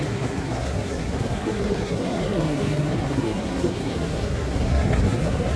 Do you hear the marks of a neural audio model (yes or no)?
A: yes